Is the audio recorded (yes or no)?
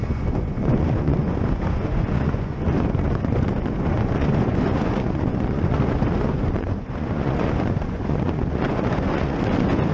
no